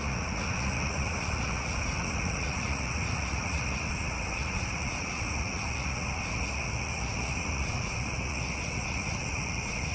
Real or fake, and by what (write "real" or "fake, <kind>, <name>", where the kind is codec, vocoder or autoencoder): fake, vocoder, Vocos